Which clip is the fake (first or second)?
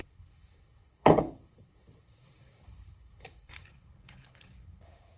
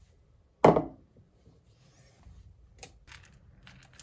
first